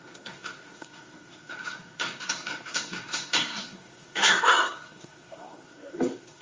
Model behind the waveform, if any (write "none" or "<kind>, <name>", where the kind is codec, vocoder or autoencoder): codec, SNAC